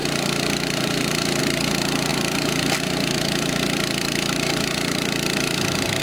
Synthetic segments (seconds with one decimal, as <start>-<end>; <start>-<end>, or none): 0.0-6.0